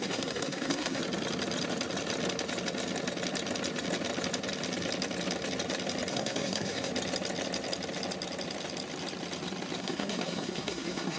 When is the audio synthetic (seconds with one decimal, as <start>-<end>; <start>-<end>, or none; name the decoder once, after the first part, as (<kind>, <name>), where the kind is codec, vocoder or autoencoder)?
0.0-1.0 (codec, SNAC); 6.1-6.9; 9.8-11.2